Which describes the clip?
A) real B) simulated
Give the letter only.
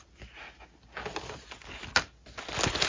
A